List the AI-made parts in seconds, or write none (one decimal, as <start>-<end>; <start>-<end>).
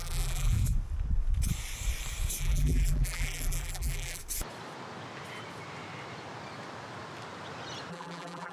0.0-0.6; 2.4-4.2; 7.9-8.5